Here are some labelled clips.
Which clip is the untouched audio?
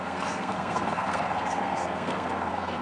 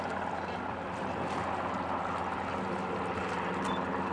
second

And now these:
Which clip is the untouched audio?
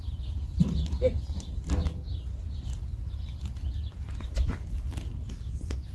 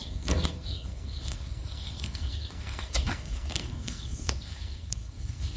first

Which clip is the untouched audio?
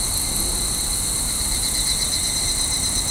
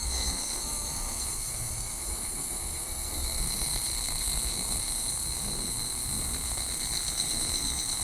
first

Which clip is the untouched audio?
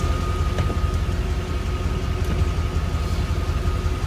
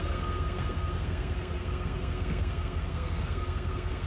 first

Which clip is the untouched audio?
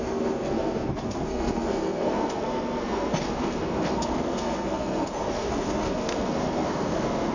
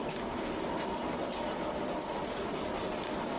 second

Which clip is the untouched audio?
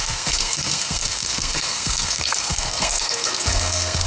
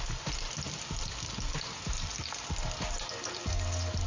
second